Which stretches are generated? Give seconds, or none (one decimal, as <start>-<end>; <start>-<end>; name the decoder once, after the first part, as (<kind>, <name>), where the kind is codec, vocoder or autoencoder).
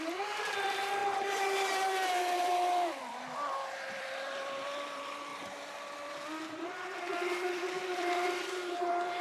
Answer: 0.0-1.0 (vocoder, BigVGAN v2); 3.0-5.3; 7.1-9.2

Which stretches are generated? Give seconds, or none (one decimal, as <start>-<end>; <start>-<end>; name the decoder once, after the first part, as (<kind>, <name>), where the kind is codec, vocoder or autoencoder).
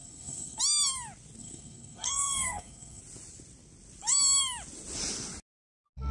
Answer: 0.0-0.6 (codec, SNAC); 1.4-3.0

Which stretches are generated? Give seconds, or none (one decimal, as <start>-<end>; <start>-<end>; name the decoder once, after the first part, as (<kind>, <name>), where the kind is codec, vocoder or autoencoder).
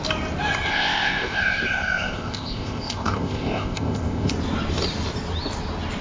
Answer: 0.7-4.3 (codec, ZipCodec)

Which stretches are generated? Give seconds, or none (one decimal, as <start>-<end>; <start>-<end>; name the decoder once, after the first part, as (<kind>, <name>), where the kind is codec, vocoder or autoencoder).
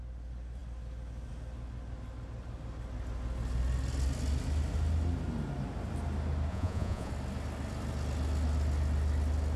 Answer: 6.5-7.1 (vocoder, Vocos)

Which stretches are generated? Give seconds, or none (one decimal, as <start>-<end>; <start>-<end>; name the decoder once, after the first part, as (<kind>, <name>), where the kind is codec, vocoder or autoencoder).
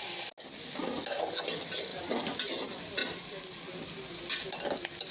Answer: 1.9-2.5 (vocoder, BigVGAN v2); 3.0-3.6